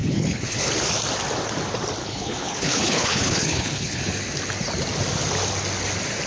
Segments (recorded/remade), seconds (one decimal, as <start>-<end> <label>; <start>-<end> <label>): 0.0-0.7 remade; 0.7-2.0 recorded; 2.0-4.0 remade; 4.0-6.3 recorded